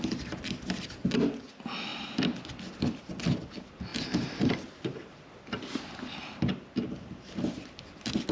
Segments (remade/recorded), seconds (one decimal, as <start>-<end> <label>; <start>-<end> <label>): 0.0-8.3 recorded